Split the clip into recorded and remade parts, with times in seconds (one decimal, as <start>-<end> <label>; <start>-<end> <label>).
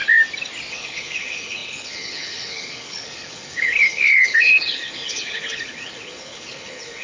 0.0-0.7 recorded; 0.7-7.0 remade